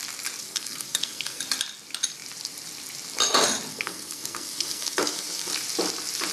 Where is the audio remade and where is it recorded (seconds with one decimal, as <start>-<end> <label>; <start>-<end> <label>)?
0.0-0.4 recorded; 0.4-1.4 remade; 1.4-3.7 recorded; 3.7-5.5 remade; 5.5-6.3 recorded